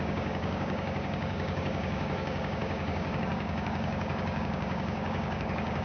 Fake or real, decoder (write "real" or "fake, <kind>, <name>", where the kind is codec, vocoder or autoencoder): fake, codec, DAC